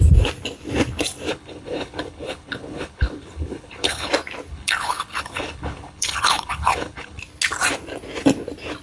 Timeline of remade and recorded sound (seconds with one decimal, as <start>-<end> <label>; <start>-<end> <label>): 0.0-1.3 recorded; 1.3-4.1 remade; 4.1-4.5 recorded; 4.5-7.2 remade; 7.2-8.8 recorded